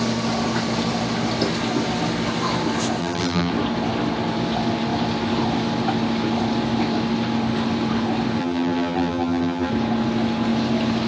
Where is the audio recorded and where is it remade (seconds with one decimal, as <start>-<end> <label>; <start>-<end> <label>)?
0.0-3.0 recorded; 3.0-3.5 remade; 3.5-8.4 recorded; 8.4-9.7 remade; 9.7-11.1 recorded